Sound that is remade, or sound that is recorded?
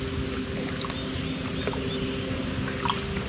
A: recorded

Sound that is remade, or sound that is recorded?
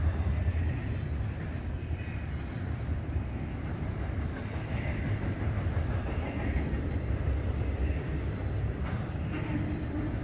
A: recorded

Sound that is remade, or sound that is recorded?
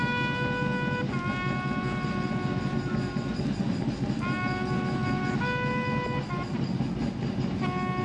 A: recorded